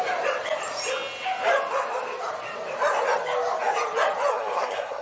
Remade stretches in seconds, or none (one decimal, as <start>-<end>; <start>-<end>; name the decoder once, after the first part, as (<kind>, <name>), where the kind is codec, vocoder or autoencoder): 4.3-5.0 (codec, SNAC)